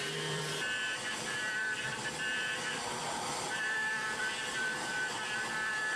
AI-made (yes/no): yes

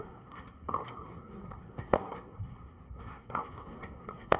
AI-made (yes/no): yes